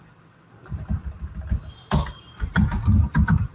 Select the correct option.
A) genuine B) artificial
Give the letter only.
B